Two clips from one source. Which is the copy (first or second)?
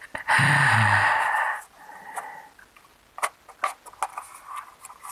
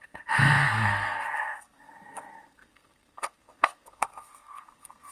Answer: second